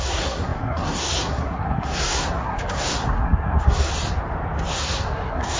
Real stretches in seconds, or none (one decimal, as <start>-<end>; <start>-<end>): 3.9-4.7